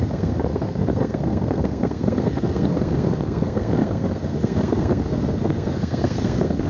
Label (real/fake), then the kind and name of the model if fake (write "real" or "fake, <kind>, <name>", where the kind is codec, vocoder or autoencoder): fake, codec, SNAC